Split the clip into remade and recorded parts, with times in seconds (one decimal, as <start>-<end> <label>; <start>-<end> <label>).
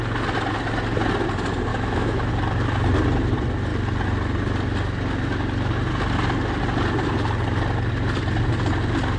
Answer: 0.0-1.7 recorded; 1.7-2.3 remade; 2.3-9.2 recorded